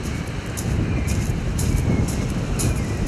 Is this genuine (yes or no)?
yes